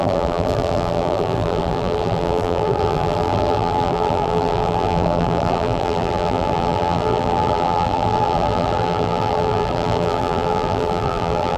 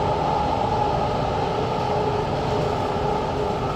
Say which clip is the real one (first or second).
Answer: second